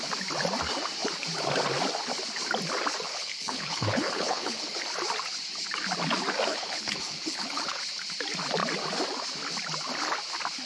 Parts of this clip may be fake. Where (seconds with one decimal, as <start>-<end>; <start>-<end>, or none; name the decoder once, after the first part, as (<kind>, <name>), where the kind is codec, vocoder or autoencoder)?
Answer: 3.1-4.8 (codec, HILCodec); 6.5-7.8